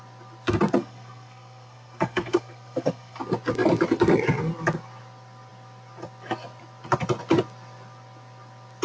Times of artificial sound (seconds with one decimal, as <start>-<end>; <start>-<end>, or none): 0.8-3.2